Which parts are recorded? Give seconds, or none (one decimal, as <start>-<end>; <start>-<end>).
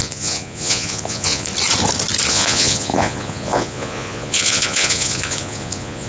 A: 1.5-2.3